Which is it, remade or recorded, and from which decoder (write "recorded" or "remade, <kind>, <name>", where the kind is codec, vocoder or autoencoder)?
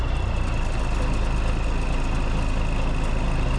recorded